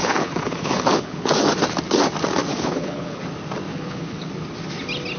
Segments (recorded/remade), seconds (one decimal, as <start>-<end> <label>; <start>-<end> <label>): 0.0-1.3 remade; 1.3-2.5 recorded; 2.5-3.2 remade; 3.2-3.7 recorded; 3.7-4.3 remade; 4.3-5.2 recorded